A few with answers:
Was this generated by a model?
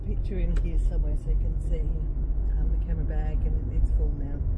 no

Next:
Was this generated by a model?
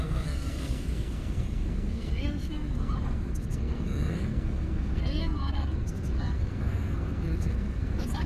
yes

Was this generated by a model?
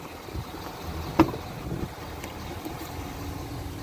no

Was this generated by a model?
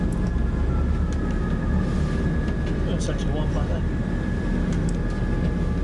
no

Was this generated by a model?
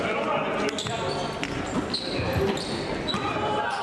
no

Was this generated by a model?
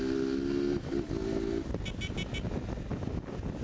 no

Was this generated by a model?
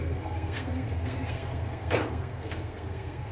yes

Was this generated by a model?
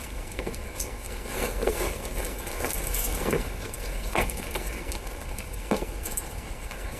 yes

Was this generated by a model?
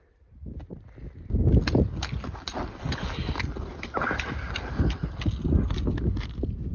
no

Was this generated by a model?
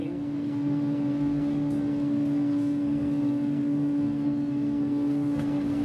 yes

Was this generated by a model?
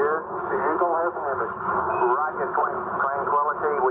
no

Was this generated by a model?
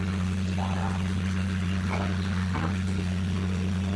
no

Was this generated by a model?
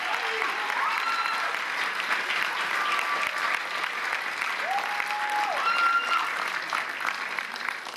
no